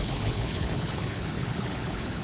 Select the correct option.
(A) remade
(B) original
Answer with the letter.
A